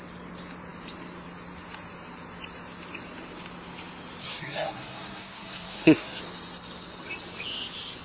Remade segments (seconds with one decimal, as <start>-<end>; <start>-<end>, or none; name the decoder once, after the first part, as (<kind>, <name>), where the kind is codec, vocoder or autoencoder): 4.2-6.2 (codec, SNAC)